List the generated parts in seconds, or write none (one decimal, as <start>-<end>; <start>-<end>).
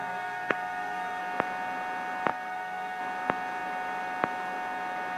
0.0-1.2; 2.3-3.0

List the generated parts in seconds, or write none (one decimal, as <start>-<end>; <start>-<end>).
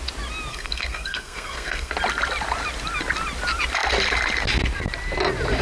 0.5-1.9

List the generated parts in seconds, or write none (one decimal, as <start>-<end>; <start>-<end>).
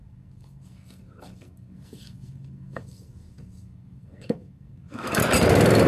0.0-5.2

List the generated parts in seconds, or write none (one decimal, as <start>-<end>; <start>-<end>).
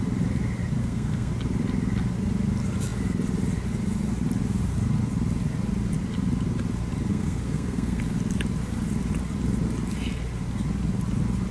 0.8-1.3; 7.1-8.0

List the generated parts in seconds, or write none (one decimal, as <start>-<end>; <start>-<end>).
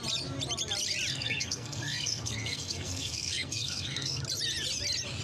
1.1-4.2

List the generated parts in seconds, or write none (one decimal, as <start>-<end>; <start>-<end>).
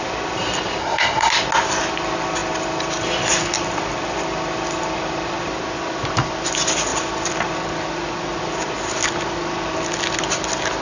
0.8-1.3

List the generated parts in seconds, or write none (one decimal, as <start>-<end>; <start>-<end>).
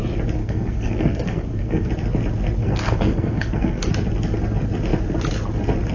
0.4-1.9; 2.6-3.9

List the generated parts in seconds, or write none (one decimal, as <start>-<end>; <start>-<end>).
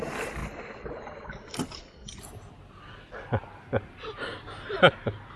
none